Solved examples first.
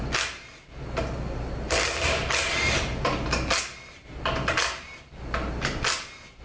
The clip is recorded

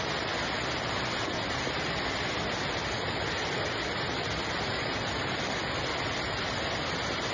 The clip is recorded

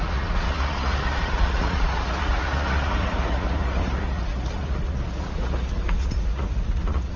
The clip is remade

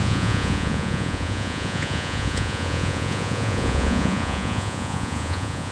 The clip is remade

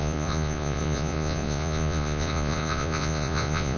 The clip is remade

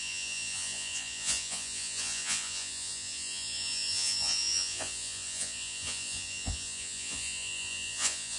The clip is remade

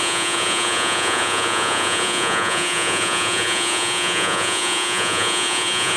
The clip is remade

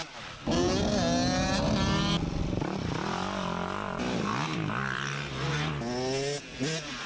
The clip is recorded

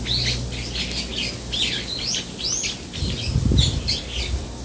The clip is recorded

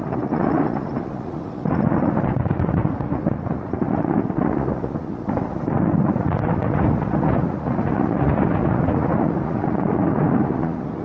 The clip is remade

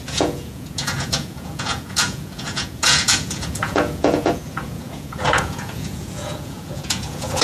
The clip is remade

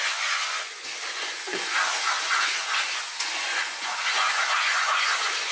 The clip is remade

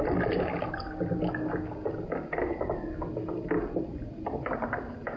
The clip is recorded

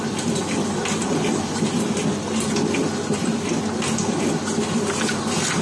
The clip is recorded